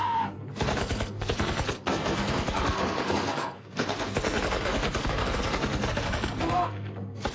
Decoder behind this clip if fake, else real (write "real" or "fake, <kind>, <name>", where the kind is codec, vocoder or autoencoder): fake, codec, SNAC